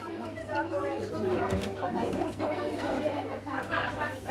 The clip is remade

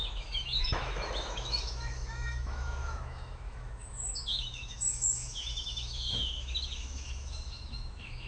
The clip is remade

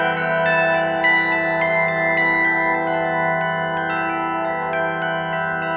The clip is recorded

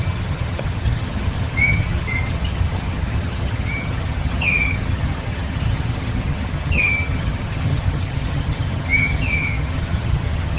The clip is remade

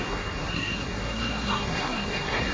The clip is remade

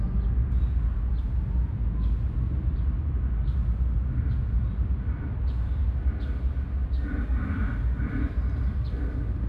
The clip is recorded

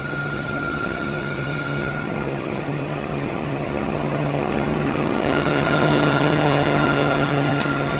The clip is remade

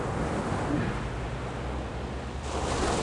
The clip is recorded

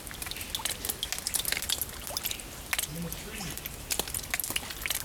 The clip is recorded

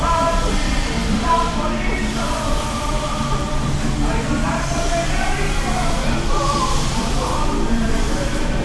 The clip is remade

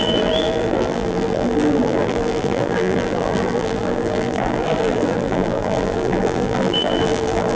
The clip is remade